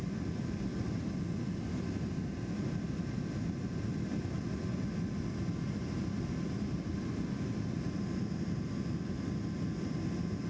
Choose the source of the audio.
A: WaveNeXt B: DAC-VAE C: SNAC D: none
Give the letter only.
D